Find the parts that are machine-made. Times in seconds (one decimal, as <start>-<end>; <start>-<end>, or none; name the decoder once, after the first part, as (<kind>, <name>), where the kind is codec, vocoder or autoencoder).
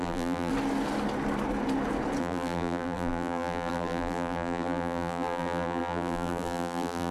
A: 0.0-0.5 (vocoder, BigVGAN v2); 2.2-7.1